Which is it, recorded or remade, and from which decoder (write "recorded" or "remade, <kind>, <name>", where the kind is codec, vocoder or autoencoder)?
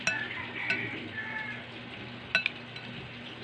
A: recorded